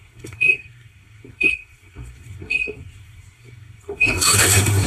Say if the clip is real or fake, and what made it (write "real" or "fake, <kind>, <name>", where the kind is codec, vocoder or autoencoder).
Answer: fake, codec, SNAC